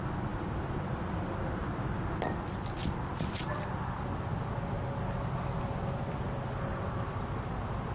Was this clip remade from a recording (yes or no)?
no